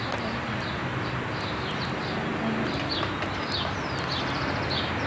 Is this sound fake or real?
real